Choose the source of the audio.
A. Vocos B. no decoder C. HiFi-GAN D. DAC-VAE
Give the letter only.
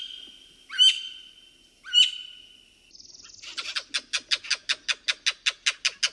B